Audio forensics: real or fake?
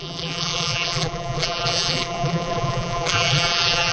fake